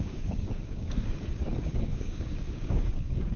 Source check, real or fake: fake